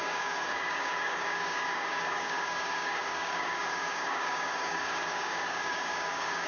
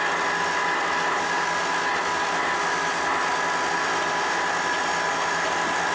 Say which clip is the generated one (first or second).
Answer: first